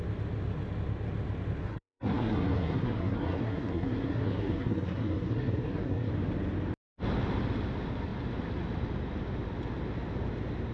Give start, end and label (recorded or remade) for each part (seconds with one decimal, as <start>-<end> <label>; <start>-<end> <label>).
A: 0.0-1.6 recorded; 1.6-6.1 remade; 6.1-10.7 recorded